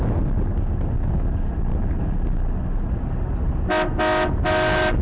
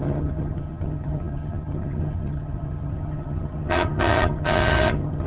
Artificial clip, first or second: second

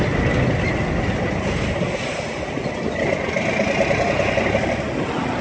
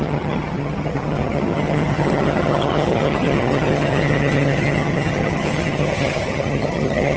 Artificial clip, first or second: second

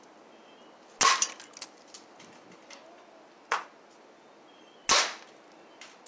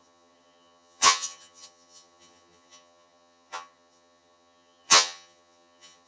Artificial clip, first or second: second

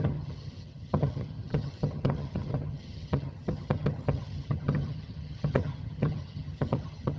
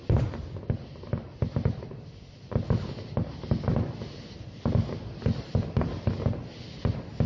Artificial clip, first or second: first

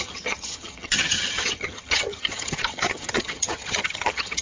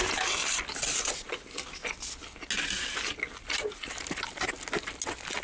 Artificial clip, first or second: first